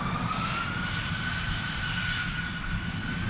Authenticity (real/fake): real